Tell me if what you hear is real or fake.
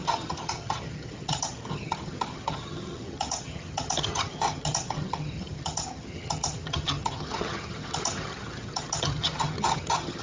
fake